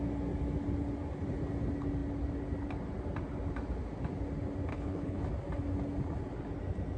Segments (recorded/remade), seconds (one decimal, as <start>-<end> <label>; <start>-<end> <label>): 0.0-4.7 recorded; 4.7-5.3 remade; 5.3-7.0 recorded